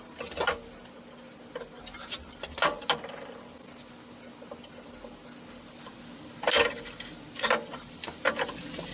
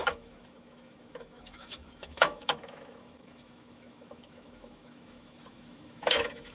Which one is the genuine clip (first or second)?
first